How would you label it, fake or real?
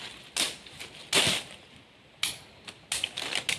real